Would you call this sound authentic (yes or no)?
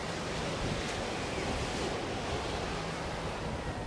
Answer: yes